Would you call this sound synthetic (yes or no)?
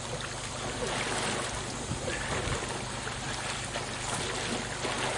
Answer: no